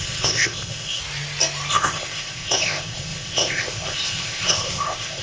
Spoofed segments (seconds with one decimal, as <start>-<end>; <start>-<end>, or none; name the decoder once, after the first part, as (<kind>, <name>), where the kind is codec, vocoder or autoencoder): 0.0-1.0 (codec, ZipCodec); 1.7-5.2